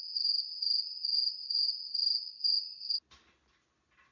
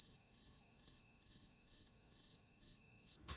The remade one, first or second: second